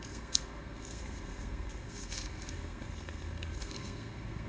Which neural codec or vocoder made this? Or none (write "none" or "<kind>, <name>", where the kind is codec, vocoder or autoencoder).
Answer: codec, SNAC